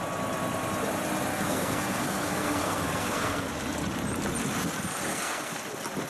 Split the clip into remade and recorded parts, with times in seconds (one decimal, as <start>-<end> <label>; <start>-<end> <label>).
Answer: 0.0-1.3 recorded; 1.3-3.5 remade; 3.5-5.1 recorded; 5.1-5.6 remade; 5.6-6.1 recorded